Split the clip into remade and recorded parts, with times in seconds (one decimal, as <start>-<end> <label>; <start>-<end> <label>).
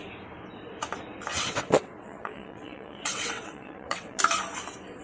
0.0-1.3 recorded; 1.3-4.2 remade; 4.2-5.0 recorded